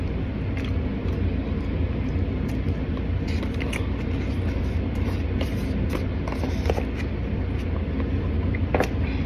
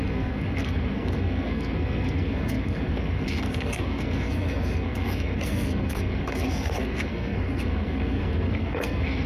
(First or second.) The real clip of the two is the first